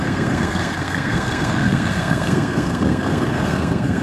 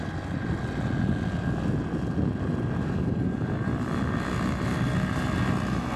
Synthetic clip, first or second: first